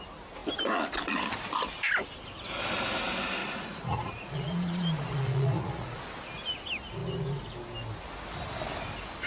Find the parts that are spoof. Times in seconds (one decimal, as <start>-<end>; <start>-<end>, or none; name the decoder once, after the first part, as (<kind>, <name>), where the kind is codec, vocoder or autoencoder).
3.4-6.0 (vocoder, Vocos)